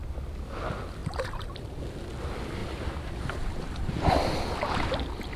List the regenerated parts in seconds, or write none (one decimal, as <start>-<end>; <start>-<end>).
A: 1.0-1.8; 2.6-4.0